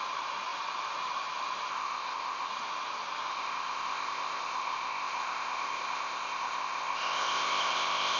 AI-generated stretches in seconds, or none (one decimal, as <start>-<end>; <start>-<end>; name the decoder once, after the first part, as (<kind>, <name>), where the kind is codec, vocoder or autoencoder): 1.7-2.5 (codec, ZipCodec); 3.3-8.2